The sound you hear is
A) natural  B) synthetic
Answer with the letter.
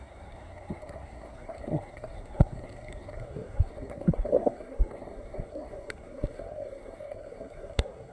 B